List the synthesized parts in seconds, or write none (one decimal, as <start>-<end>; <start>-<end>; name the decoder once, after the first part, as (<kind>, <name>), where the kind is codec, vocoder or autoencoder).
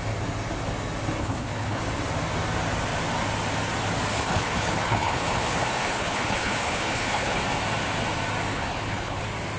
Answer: 1.2-1.8 (codec, HILCodec); 4.1-7.4; 8.5-9.2